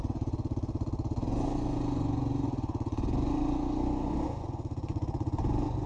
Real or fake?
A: fake